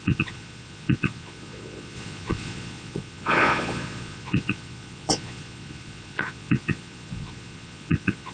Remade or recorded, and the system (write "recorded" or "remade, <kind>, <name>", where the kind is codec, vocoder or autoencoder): remade, vocoder, Vocos